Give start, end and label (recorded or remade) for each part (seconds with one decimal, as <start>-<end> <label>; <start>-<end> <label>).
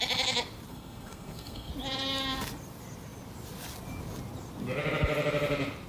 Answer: 0.0-0.7 recorded; 0.7-1.7 remade; 1.7-5.9 recorded